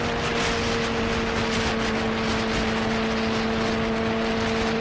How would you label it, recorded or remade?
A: recorded